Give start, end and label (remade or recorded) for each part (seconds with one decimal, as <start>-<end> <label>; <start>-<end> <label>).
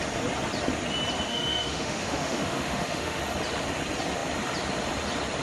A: 0.0-1.3 recorded; 1.3-3.2 remade; 3.2-5.4 recorded